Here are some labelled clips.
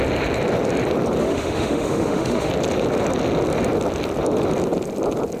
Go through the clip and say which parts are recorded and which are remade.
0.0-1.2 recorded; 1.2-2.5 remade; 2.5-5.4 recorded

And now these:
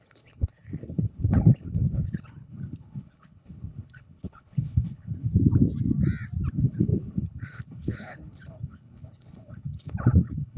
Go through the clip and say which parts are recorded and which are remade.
0.0-5.3 remade; 5.3-6.5 recorded; 6.5-10.6 remade

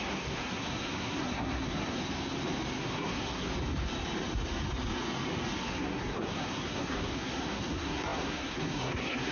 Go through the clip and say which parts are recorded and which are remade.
0.0-2.0 remade; 2.0-2.8 recorded; 2.8-3.5 remade; 3.5-5.6 recorded; 5.6-9.3 remade

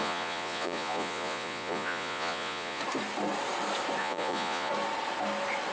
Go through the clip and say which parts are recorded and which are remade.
0.0-2.8 remade; 2.8-4.0 recorded; 4.0-4.7 remade; 4.7-5.7 recorded

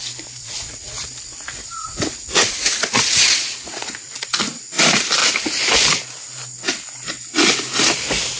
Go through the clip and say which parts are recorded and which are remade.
0.0-0.4 recorded; 0.4-0.9 remade; 0.9-1.6 recorded; 1.6-4.6 remade; 4.6-8.4 recorded

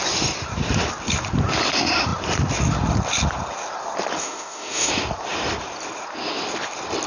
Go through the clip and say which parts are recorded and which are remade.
0.0-4.2 recorded; 4.2-4.9 remade; 4.9-7.1 recorded

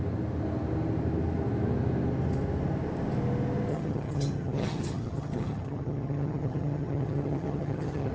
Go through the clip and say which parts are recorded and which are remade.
0.0-3.7 recorded; 3.7-8.1 remade

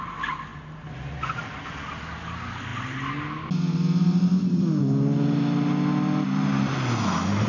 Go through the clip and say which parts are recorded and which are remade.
0.0-7.5 recorded